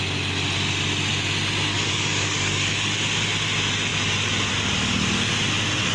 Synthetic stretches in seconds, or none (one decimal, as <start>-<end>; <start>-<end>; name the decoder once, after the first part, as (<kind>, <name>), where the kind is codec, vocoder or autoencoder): 1.7-2.9 (codec, DAC)